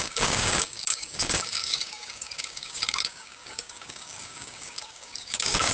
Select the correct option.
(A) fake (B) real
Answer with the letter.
A